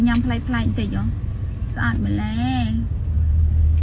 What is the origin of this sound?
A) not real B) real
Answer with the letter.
B